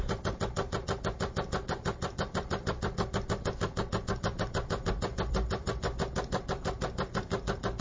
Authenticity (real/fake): fake